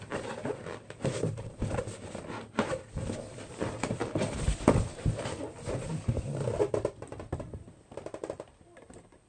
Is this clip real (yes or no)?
no